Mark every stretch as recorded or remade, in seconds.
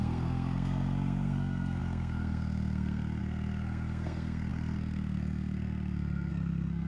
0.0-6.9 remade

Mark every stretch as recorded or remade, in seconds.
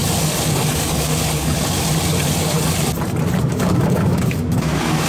0.0-0.7 recorded; 0.7-1.1 remade; 1.1-3.4 recorded; 3.4-5.1 remade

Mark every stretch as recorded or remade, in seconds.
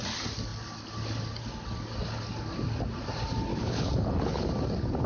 0.0-3.5 recorded; 3.5-4.5 remade; 4.5-5.1 recorded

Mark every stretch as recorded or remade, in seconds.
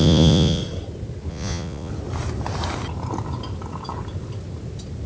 0.0-0.6 remade; 0.6-1.3 recorded; 1.3-1.9 remade; 1.9-5.1 recorded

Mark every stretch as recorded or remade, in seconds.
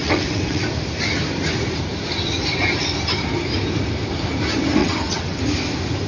0.0-0.6 remade; 0.6-4.8 recorded; 4.8-5.4 remade; 5.4-6.1 recorded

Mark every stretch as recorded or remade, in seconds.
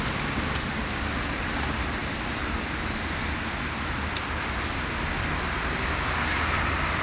0.0-2.0 remade; 2.0-6.2 recorded; 6.2-7.0 remade